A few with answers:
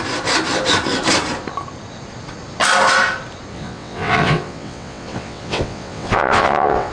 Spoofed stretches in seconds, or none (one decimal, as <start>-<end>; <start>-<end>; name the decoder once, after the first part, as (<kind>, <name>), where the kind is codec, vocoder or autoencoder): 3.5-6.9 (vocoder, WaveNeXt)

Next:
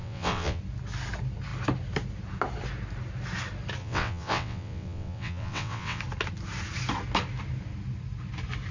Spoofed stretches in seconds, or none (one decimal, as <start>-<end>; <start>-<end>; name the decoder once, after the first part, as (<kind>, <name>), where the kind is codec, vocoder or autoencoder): 0.0-0.6 (vocoder, WaveNeXt); 3.8-6.0

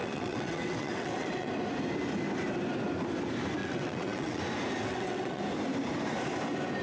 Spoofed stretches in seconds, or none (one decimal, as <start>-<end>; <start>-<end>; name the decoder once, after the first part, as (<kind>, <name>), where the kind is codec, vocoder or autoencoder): 0.0-1.5 (vocoder, WaveNeXt); 3.6-4.4; 4.9-5.4